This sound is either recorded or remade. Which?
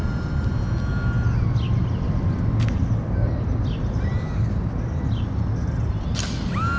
recorded